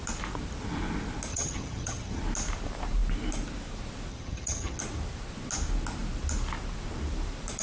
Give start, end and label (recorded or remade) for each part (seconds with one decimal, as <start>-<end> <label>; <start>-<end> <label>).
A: 0.0-1.3 recorded; 1.3-2.2 remade; 2.2-4.1 recorded; 4.1-4.8 remade; 4.8-7.6 recorded